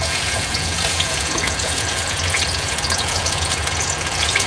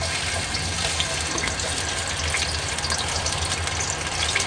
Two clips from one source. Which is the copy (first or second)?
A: first